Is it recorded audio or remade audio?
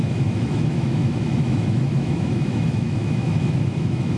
remade